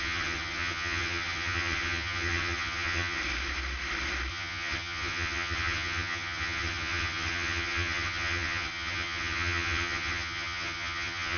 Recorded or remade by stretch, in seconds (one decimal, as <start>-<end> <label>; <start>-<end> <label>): 0.0-3.2 remade; 3.2-4.3 recorded; 4.3-11.4 remade